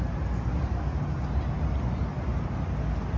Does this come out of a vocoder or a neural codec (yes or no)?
no